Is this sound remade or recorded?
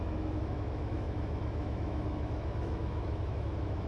remade